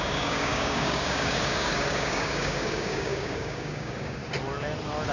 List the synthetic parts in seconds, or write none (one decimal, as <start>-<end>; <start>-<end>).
0.0-4.2